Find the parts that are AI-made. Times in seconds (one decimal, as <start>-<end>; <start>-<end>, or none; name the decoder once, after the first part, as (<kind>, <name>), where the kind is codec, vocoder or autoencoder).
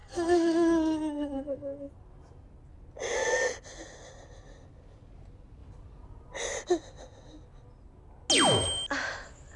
0.0-1.9 (codec, SNAC)